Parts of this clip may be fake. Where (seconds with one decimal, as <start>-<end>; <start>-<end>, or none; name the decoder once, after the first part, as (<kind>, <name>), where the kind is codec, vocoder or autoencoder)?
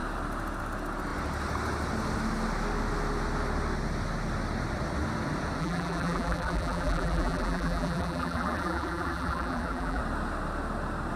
5.6-10.0 (vocoder, BigVGAN v2)